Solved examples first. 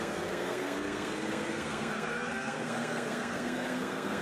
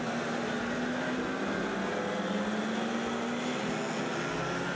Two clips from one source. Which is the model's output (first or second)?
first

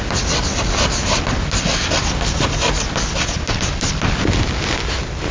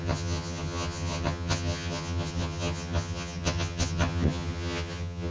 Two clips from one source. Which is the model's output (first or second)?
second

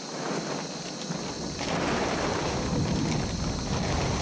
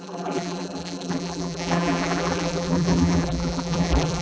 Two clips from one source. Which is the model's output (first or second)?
second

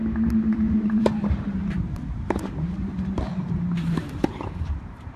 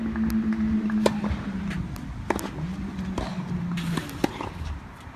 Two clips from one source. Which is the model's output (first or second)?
first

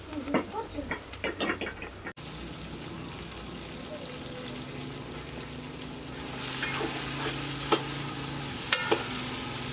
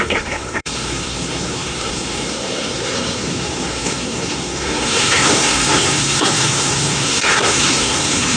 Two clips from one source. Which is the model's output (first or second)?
second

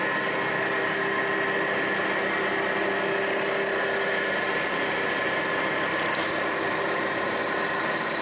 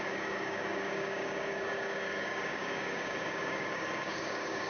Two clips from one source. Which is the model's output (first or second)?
second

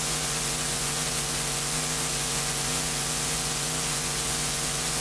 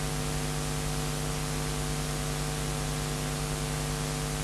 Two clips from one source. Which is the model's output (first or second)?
first